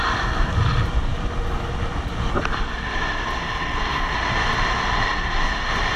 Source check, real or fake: real